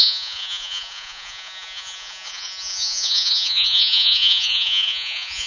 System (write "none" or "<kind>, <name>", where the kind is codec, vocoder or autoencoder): vocoder, Vocos